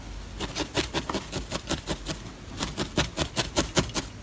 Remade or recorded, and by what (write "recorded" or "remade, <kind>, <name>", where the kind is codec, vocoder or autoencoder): recorded